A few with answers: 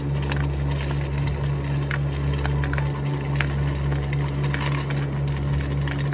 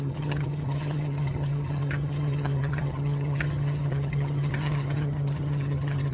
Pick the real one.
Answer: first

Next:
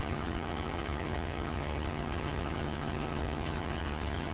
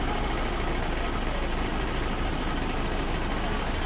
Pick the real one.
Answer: second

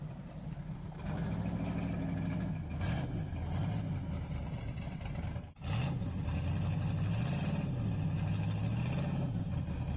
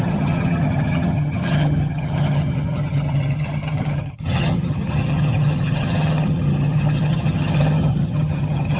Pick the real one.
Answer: first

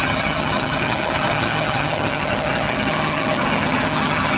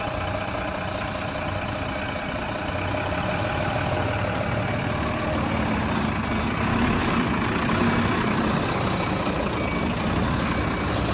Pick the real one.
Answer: second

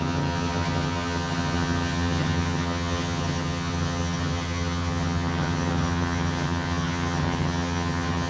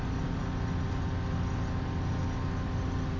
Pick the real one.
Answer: second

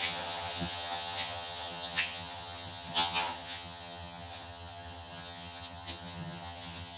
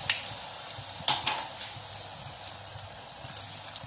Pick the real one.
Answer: second